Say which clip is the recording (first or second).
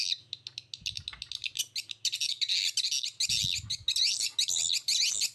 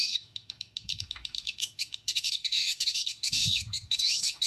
first